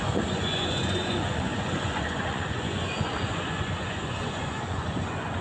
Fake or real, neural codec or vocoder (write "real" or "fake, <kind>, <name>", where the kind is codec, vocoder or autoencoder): fake, vocoder, Vocos